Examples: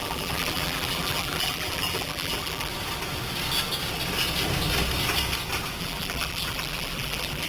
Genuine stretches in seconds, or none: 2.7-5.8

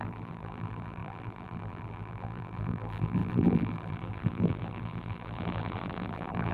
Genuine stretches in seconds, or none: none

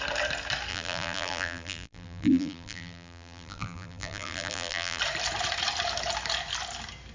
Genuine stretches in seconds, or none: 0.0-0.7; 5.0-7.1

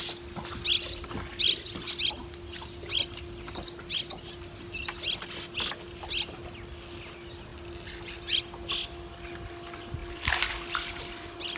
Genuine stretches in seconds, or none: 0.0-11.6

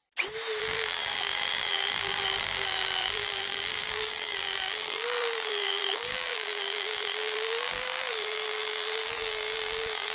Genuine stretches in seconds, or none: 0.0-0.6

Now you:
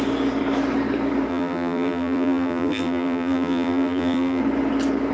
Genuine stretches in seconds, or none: 0.0-1.3; 4.4-5.1

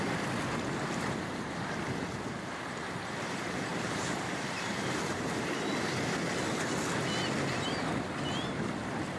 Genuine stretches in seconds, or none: 0.0-3.7; 5.7-9.2